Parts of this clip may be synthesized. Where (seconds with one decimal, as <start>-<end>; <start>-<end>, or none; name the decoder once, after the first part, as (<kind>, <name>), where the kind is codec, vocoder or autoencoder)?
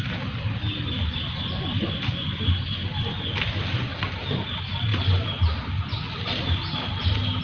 none